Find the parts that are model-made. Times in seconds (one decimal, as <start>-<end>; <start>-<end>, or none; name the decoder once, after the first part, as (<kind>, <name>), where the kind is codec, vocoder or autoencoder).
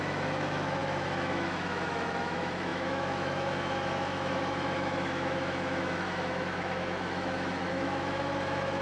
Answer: 0.0-8.8 (autoencoder, DAC-VAE)